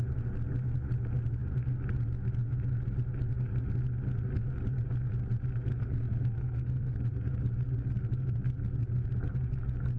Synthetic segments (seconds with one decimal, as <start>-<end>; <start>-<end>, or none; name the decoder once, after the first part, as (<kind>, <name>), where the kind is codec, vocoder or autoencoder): 5.7-6.9 (codec, SNAC)